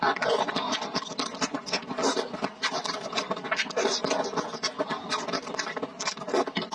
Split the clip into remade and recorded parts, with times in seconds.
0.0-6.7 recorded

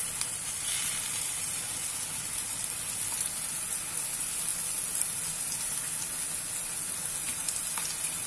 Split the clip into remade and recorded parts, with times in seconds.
0.0-1.8 remade; 1.8-8.3 recorded

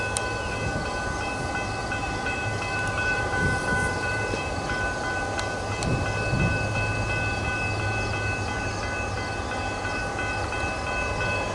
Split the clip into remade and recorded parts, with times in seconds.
0.0-1.8 recorded; 1.8-4.6 remade; 4.6-11.5 recorded

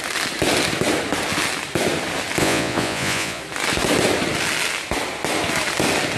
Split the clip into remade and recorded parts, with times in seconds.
0.0-2.4 recorded; 2.4-3.4 remade; 3.4-6.2 recorded

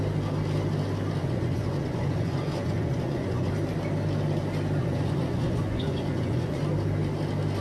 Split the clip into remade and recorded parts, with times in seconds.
0.0-1.2 recorded; 1.2-3.5 remade; 3.5-4.8 recorded; 4.8-6.6 remade; 6.6-7.6 recorded

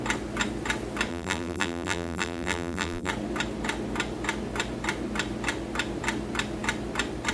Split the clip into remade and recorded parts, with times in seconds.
0.0-1.1 recorded; 1.1-3.1 remade; 3.1-7.3 recorded

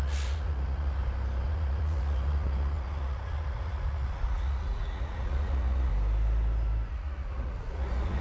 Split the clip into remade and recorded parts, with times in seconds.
0.0-1.0 remade; 1.0-1.5 recorded; 1.5-5.9 remade; 5.9-6.9 recorded; 6.9-8.2 remade